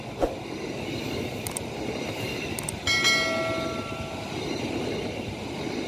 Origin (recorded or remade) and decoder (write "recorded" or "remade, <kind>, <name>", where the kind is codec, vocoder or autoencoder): recorded